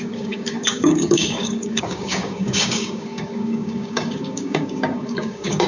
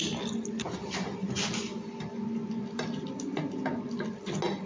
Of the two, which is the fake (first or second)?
first